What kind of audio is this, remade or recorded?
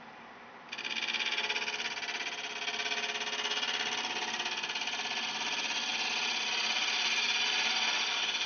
recorded